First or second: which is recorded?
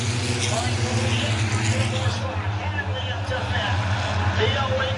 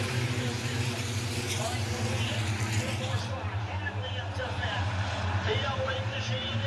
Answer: first